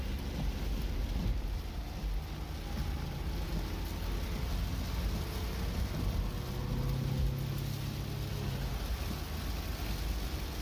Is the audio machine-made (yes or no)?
no